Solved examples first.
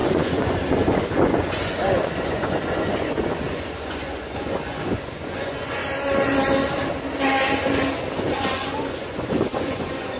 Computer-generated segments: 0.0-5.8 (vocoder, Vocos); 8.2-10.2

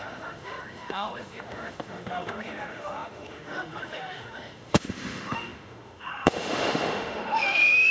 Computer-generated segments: 0.0-7.9 (autoencoder, DAC-VAE)

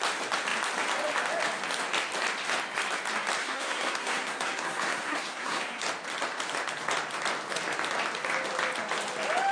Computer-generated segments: 3.4-5.8 (codec, SNAC)